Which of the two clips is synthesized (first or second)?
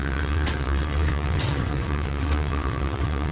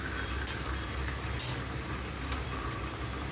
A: first